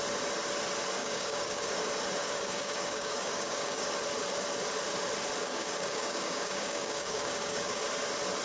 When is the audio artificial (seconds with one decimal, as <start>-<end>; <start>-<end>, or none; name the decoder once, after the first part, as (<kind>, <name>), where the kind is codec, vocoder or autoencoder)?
1.0-1.7 (codec, DAC); 2.2-3.9; 5.4-7.8